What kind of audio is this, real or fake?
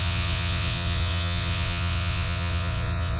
fake